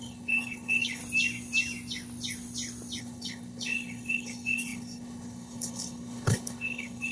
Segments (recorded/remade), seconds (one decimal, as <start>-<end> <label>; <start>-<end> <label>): 0.0-1.0 remade; 1.0-3.0 recorded; 3.0-7.1 remade